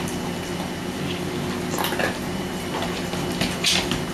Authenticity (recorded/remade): recorded